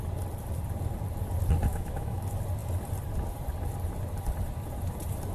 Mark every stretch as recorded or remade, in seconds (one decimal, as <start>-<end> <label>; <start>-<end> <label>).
0.0-1.7 recorded; 1.7-2.2 remade; 2.2-5.3 recorded